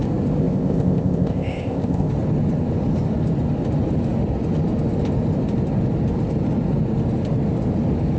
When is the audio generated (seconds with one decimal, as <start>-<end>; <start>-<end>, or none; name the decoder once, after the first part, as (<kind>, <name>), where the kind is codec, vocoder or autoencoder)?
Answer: 0.4-2.1 (codec, ZipCodec)